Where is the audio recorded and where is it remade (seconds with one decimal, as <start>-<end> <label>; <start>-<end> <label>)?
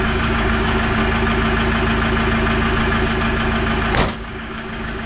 0.0-1.0 remade; 1.0-4.1 recorded; 4.1-5.1 remade